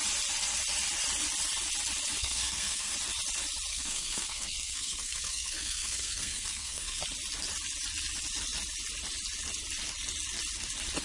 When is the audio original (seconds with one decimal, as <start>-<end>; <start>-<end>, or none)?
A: 0.0-2.2; 2.9-3.7; 7.0-11.0

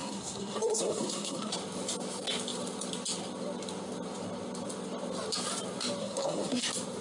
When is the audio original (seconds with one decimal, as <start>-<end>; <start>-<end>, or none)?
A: 1.5-6.0; 6.6-7.0

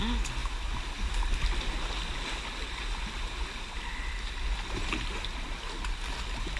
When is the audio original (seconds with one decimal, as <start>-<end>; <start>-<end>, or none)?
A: 0.0-6.6

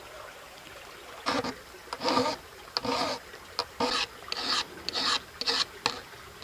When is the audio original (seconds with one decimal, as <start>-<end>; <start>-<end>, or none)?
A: 0.0-6.4

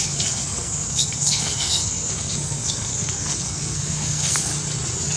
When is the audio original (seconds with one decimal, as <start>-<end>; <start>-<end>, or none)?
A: 4.5-5.2